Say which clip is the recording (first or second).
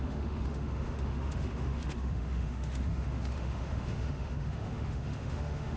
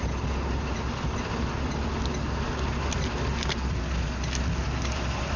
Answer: second